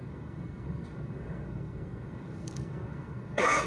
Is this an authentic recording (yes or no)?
no